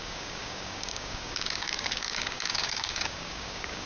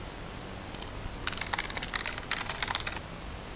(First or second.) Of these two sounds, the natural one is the second